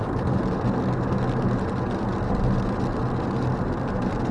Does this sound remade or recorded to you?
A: recorded